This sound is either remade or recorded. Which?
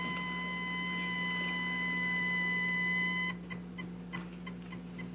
recorded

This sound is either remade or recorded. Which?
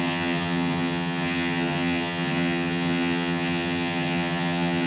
remade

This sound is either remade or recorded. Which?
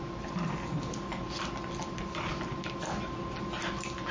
recorded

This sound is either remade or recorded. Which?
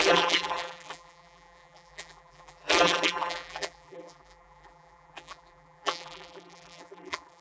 remade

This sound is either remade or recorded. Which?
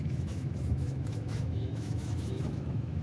remade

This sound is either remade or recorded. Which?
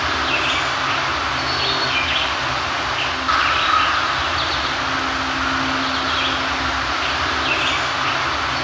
recorded